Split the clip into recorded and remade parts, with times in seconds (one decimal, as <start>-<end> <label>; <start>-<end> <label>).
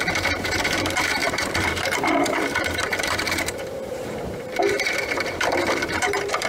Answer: 0.0-6.5 remade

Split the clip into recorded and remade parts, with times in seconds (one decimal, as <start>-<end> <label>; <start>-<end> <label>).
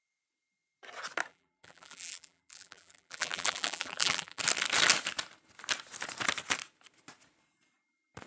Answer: 0.0-1.3 recorded; 1.3-4.4 remade; 4.4-8.3 recorded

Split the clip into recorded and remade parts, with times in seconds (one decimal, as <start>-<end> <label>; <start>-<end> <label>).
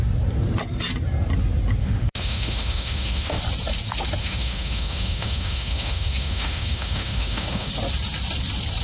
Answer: 0.0-1.8 recorded; 1.8-3.4 remade; 3.4-4.2 recorded; 4.2-7.7 remade; 7.7-8.8 recorded